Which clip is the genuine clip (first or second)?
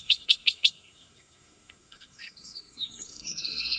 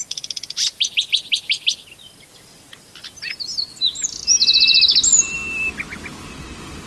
second